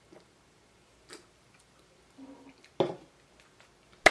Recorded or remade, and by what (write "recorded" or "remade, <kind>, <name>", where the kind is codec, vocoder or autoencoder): recorded